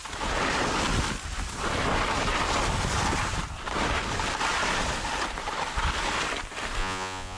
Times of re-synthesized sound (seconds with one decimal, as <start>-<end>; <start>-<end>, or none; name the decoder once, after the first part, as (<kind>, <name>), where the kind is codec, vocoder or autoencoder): 6.8-7.4 (vocoder, Vocos)